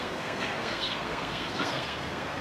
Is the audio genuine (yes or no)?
no